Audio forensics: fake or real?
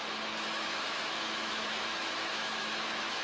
fake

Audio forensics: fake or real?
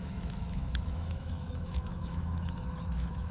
fake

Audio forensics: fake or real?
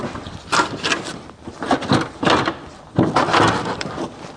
real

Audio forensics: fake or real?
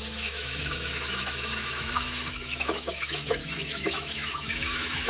fake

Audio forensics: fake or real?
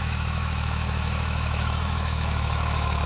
fake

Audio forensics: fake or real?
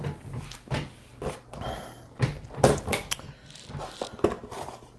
real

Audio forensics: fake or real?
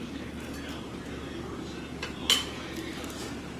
real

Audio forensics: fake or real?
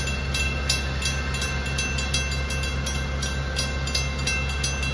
real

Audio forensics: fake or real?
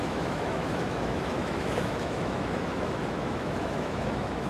fake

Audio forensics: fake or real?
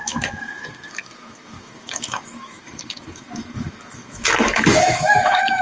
fake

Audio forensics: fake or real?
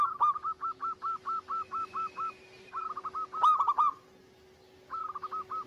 real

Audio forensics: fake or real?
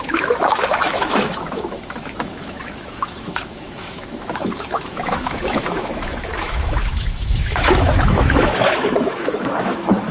fake